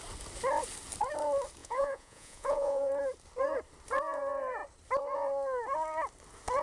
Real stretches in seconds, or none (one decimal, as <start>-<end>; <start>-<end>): 0.0-1.6; 2.9-6.6